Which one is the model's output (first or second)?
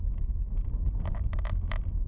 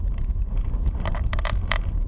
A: second